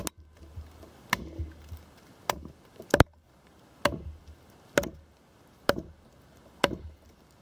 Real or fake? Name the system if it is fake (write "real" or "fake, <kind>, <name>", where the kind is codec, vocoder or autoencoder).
real